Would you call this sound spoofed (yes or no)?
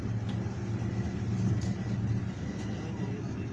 no